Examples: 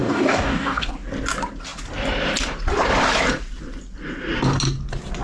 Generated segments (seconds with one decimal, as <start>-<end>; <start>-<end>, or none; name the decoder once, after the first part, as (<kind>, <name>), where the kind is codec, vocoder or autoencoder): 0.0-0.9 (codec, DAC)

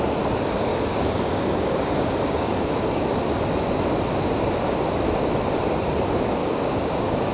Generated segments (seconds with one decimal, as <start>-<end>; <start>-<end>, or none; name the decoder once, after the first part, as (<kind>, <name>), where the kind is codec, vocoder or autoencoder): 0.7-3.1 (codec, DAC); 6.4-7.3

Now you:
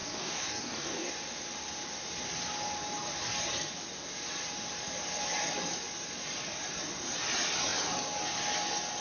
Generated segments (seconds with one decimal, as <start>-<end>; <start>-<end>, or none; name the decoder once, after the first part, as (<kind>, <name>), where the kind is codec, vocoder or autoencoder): 0.0-1.1 (codec, DAC)